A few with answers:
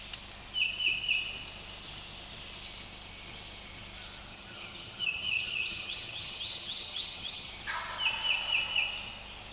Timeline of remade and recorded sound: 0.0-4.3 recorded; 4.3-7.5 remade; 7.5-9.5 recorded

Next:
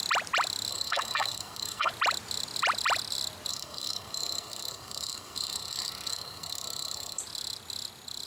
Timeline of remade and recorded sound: 0.0-0.7 recorded; 0.7-1.9 remade; 1.9-3.5 recorded; 3.5-7.2 remade; 7.2-8.3 recorded

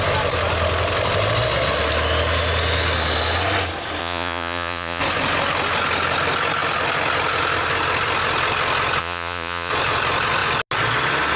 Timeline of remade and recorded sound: 0.0-4.0 recorded; 4.0-5.0 remade; 5.0-9.0 recorded; 9.0-9.7 remade; 9.7-11.4 recorded

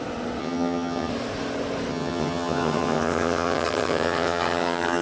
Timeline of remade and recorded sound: 0.0-0.4 recorded; 0.4-1.1 remade; 1.1-1.9 recorded; 1.9-5.0 remade

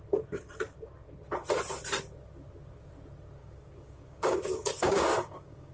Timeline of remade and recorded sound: 0.0-3.4 recorded; 3.4-5.7 remade

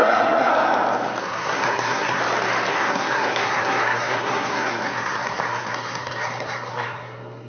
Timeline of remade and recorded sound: 0.0-0.5 remade; 0.5-1.2 recorded; 1.2-2.2 remade; 2.2-2.7 recorded; 2.7-7.5 remade